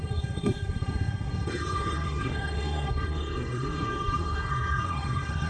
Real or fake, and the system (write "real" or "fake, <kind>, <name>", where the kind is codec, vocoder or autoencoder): fake, codec, SNAC